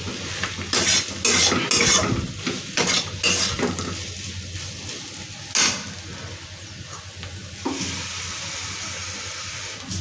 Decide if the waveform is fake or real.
real